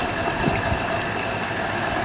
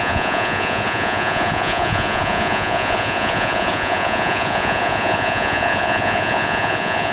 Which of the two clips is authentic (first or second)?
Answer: first